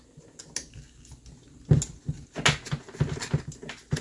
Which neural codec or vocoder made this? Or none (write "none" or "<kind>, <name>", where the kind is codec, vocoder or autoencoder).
none